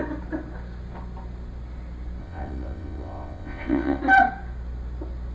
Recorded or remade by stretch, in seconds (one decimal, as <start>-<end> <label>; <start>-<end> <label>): 0.0-2.2 recorded; 2.2-4.0 remade; 4.0-5.3 recorded

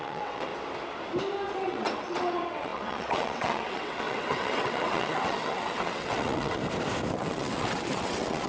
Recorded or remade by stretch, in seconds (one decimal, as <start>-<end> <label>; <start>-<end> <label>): 0.0-0.5 remade; 0.5-1.5 recorded; 1.5-6.6 remade; 6.6-7.1 recorded; 7.1-8.5 remade

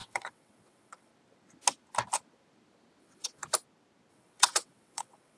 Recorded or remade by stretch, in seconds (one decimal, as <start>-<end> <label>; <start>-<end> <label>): 0.0-1.1 remade; 1.1-3.0 recorded; 3.0-3.4 remade; 3.4-4.1 recorded; 4.1-5.4 remade

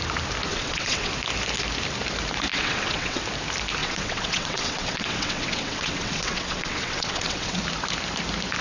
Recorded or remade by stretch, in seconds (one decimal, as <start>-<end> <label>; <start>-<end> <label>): 0.0-0.5 recorded; 0.5-1.1 remade; 1.1-2.5 recorded; 2.5-3.2 remade; 3.2-3.8 recorded; 3.8-7.6 remade; 7.6-8.6 recorded

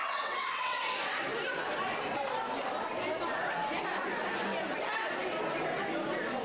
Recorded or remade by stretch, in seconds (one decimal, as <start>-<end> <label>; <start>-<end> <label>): 0.0-0.8 remade; 0.8-6.4 recorded